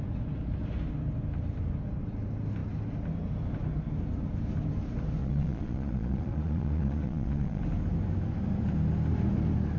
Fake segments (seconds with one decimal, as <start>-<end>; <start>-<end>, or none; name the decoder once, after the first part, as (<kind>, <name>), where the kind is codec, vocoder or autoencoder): 5.2-7.6 (vocoder, Vocos)